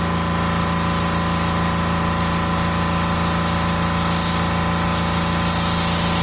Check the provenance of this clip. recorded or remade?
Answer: recorded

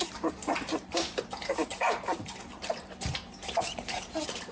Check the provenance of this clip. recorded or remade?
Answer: remade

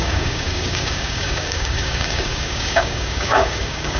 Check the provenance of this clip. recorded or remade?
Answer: remade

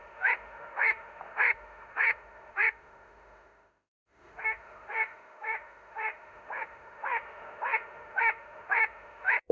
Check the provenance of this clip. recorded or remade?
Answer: remade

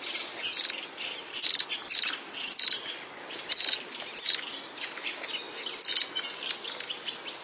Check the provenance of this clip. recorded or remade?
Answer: recorded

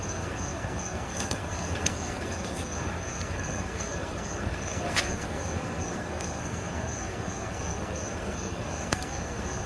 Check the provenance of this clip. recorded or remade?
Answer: remade